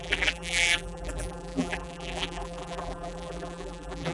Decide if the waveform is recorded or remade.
remade